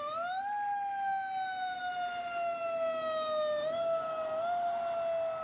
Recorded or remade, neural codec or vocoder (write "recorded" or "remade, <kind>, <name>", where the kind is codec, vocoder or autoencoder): recorded